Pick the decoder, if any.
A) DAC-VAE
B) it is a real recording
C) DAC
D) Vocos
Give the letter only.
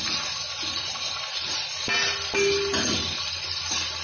B